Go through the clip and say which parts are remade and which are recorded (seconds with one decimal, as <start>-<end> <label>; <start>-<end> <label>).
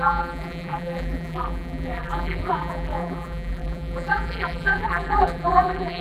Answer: 0.0-6.0 remade